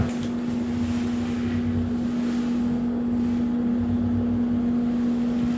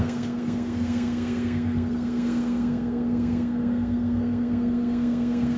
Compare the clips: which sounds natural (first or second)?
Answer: first